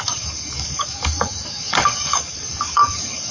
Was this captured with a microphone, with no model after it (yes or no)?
no